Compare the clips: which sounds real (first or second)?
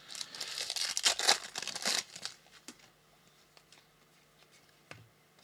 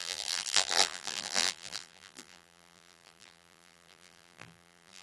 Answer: first